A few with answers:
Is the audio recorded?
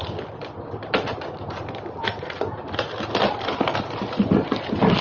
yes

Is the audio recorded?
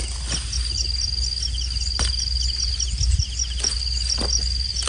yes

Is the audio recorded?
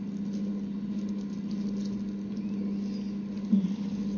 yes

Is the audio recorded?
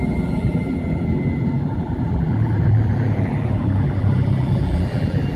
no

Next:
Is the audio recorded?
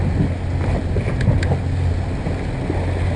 yes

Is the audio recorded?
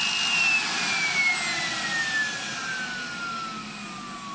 yes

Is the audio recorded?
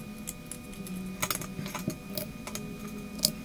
yes